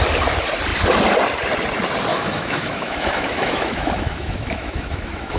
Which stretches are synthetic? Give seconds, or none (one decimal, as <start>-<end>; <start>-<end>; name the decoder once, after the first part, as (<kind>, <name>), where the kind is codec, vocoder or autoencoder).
2.1-5.4 (autoencoder, DAC-VAE)